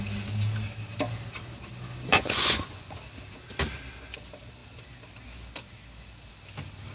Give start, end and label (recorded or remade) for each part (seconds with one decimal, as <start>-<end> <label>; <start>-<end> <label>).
0.0-2.1 recorded; 2.1-3.0 remade; 3.0-6.9 recorded